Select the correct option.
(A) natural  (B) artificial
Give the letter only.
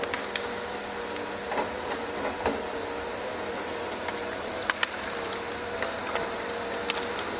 A